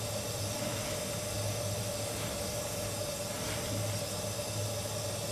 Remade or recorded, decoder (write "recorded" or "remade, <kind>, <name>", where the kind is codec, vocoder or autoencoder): recorded